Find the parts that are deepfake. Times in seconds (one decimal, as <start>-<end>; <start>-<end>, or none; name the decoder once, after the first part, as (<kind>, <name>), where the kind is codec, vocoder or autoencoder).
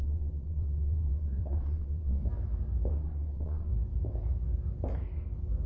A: 0.0-2.2 (vocoder, WaveNeXt); 2.9-3.7